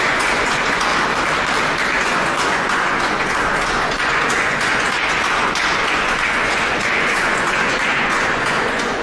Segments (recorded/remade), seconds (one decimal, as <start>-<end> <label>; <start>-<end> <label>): 0.0-0.9 remade; 0.9-2.0 recorded; 2.0-9.0 remade